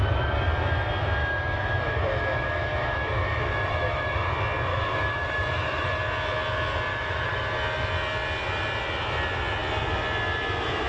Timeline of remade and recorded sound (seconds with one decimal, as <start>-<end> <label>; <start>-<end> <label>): 0.0-1.2 recorded; 1.2-4.3 remade; 4.3-4.7 recorded; 4.7-6.0 remade; 6.0-6.9 recorded; 6.9-7.4 remade; 7.4-10.9 recorded